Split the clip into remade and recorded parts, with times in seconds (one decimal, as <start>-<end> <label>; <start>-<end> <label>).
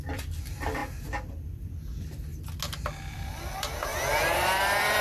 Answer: 0.0-0.8 remade; 0.8-1.3 recorded; 1.3-2.3 remade; 2.3-3.1 recorded; 3.1-3.9 remade; 3.9-4.4 recorded; 4.4-5.0 remade